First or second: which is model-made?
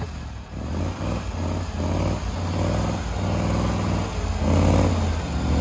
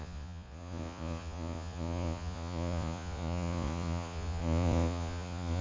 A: second